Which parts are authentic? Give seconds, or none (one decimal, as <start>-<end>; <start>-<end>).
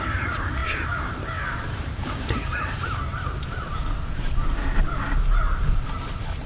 0.0-0.6; 4.5-6.5